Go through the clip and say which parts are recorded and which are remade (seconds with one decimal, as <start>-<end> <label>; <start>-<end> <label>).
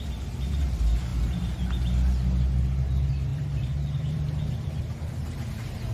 0.0-3.3 recorded; 3.3-4.8 remade; 4.8-5.9 recorded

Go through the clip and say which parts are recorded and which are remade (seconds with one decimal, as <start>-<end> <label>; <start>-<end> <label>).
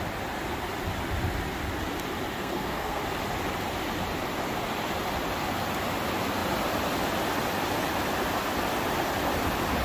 0.0-2.4 recorded; 2.4-3.0 remade; 3.0-9.8 recorded